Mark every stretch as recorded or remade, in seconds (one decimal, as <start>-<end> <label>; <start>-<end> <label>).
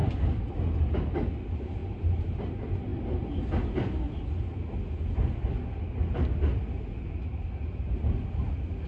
0.0-1.8 recorded; 1.8-2.4 remade; 2.4-8.9 recorded